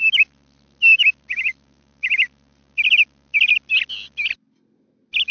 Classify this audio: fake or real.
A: real